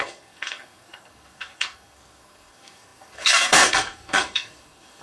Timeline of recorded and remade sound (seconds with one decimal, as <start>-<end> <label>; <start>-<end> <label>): 0.0-5.0 remade